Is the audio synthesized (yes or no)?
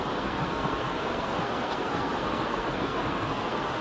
yes